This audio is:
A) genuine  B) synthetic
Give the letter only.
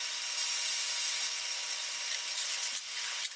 A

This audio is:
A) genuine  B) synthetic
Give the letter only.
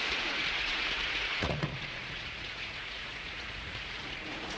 B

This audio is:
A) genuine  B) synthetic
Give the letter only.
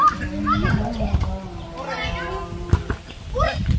A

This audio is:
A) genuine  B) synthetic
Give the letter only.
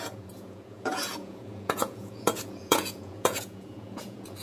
B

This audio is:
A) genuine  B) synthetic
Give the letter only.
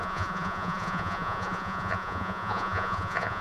B